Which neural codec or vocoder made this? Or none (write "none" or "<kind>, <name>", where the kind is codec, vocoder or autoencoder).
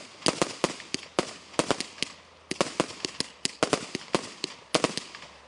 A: none